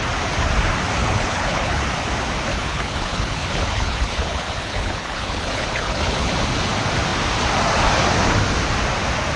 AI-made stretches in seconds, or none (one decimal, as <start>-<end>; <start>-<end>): 1.0-1.8; 2.5-6.3